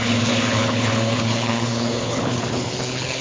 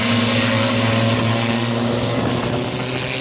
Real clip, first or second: second